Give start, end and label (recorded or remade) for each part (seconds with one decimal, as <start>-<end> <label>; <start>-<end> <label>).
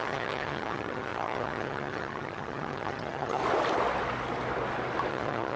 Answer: 0.0-3.4 remade; 3.4-5.1 recorded; 5.1-5.6 remade